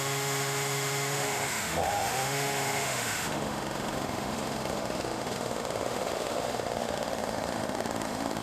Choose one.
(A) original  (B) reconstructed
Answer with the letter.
B